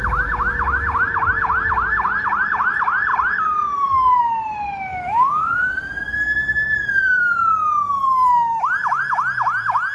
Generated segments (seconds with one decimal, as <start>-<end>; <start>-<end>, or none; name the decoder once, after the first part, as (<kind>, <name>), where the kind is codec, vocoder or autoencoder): 3.1-4.2 (vocoder, BigVGAN v2); 4.9-9.0